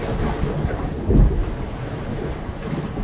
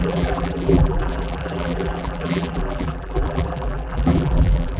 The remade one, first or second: second